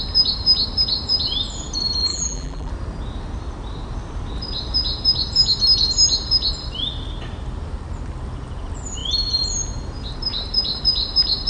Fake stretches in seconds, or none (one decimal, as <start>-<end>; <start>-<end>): 2.1-2.7